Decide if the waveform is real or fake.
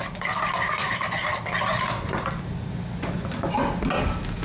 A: real